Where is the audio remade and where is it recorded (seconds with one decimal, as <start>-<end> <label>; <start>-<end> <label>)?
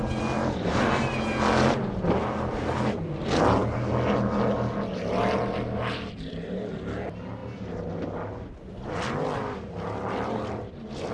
0.0-11.1 recorded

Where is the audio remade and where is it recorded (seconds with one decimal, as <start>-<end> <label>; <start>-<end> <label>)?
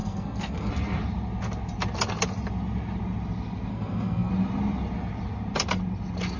0.0-0.7 remade; 0.7-3.7 recorded; 3.7-4.3 remade; 4.3-6.4 recorded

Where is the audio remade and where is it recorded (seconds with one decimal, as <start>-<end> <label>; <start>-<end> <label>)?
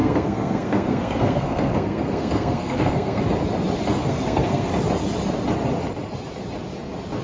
0.0-3.2 remade; 3.2-4.0 recorded; 4.0-4.7 remade; 4.7-7.2 recorded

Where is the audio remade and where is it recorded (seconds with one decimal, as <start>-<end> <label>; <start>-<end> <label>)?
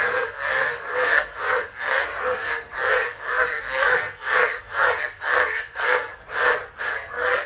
0.0-6.2 remade; 6.2-6.8 recorded; 6.8-7.5 remade